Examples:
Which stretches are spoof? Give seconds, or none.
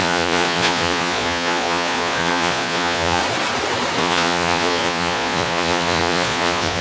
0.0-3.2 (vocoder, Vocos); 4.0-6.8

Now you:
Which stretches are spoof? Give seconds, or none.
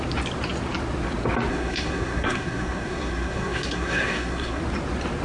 1.5-4.6 (codec, SNAC)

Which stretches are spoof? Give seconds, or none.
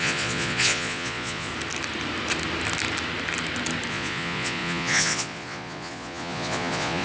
0.0-1.5 (vocoder, Vocos); 3.9-7.0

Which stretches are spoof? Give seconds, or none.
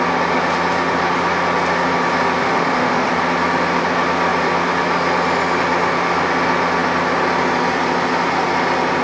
2.4-3.1 (autoencoder, DAC-VAE)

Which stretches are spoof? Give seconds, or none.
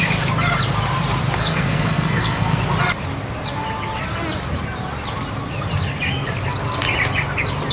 1.4-2.6 (codec, SNAC)